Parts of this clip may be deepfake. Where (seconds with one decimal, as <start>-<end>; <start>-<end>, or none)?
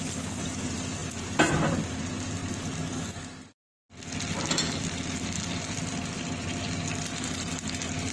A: none